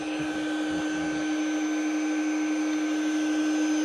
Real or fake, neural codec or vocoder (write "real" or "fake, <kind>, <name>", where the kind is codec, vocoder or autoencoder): real